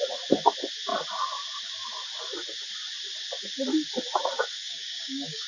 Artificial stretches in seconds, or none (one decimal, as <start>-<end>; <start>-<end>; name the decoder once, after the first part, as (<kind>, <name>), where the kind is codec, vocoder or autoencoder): 4.6-5.5 (codec, DAC)